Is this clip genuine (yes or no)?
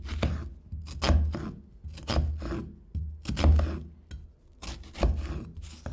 yes